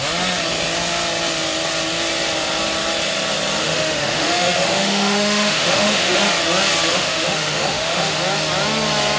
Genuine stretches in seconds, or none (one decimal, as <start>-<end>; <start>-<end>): 0.0-3.6; 6.2-6.9; 8.2-9.2